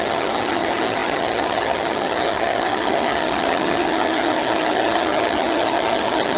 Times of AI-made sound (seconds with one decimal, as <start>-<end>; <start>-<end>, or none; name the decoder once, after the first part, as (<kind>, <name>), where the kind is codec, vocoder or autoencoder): 0.0-6.4 (vocoder, HiFi-GAN)